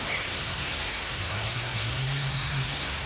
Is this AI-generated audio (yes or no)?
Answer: yes